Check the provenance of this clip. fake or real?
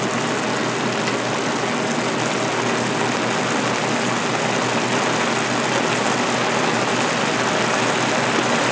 real